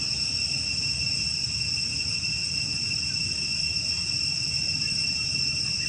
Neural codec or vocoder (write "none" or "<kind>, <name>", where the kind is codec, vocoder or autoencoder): none